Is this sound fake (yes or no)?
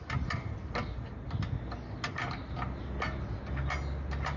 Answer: no